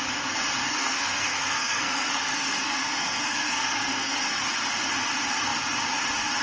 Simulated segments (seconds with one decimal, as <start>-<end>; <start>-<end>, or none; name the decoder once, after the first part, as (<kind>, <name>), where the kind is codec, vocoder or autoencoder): 0.6-4.4 (codec, SNAC)